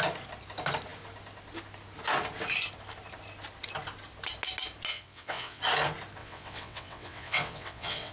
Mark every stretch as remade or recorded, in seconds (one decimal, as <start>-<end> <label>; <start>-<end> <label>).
0.0-4.9 recorded; 4.9-5.6 remade; 5.6-6.2 recorded; 6.2-8.1 remade